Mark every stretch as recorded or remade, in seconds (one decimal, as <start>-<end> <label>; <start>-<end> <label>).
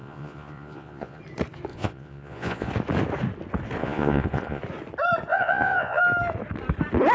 0.0-1.2 remade; 1.2-1.7 recorded; 1.7-2.7 remade; 2.7-3.8 recorded; 3.8-4.6 remade; 4.6-5.3 recorded; 5.3-6.0 remade; 6.0-7.1 recorded